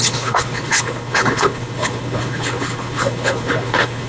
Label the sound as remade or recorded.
remade